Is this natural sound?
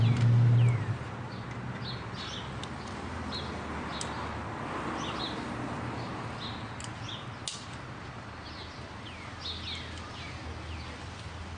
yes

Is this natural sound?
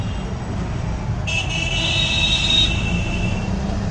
yes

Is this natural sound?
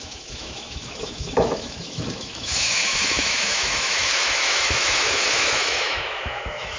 no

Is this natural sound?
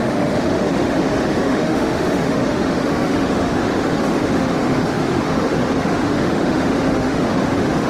no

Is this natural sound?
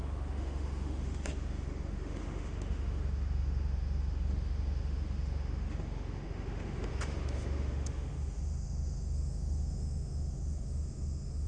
no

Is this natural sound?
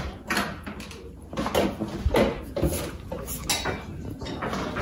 yes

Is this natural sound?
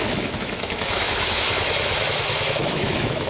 no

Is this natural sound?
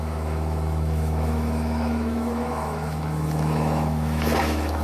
no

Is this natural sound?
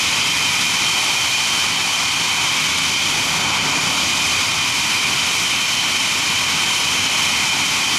yes